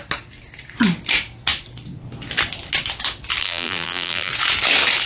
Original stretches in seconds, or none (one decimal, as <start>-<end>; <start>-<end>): 0.0-3.4; 4.3-5.1